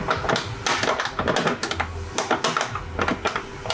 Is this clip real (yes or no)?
yes